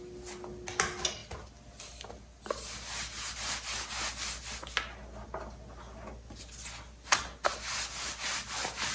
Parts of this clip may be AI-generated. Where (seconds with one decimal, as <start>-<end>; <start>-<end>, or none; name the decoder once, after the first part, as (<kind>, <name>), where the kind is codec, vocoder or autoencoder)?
none